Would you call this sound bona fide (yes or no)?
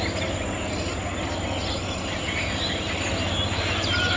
yes